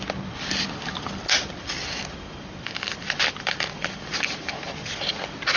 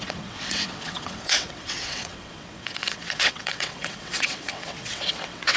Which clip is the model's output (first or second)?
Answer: second